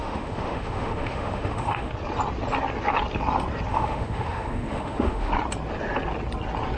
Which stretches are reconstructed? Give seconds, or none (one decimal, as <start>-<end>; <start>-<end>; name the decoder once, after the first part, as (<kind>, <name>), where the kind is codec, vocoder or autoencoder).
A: 0.0-1.9 (autoencoder, DAC-VAE); 3.7-5.3